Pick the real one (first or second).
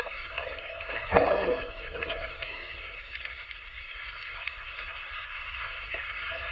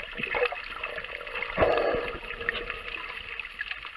second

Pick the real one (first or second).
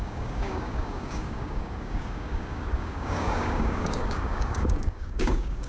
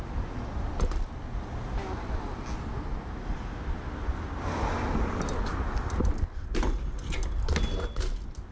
second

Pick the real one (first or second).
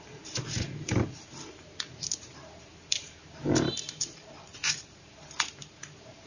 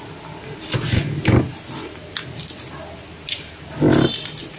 second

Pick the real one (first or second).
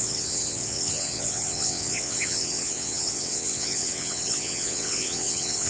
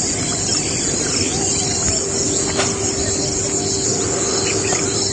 second